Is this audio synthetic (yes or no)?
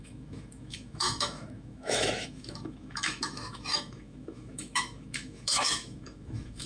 yes